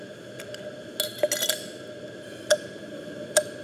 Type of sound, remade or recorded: recorded